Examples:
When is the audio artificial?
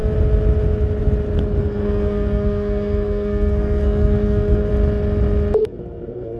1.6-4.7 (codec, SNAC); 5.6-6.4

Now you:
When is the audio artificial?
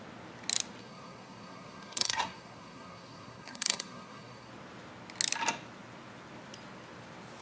0.8-4.5 (codec, SNAC)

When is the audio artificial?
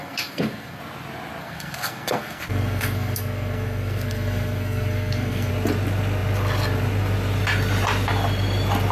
0.0-0.8 (codec, SNAC); 1.4-5.5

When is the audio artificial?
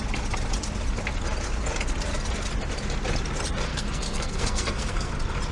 3.7-5.1 (codec, SNAC)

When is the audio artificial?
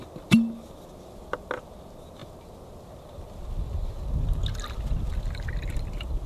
none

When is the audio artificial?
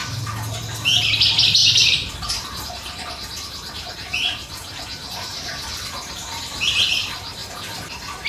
none